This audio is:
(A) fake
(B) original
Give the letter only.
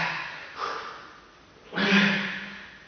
B